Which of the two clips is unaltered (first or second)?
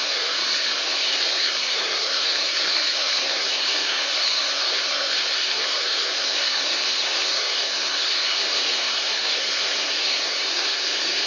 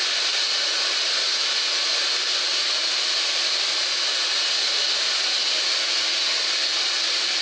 second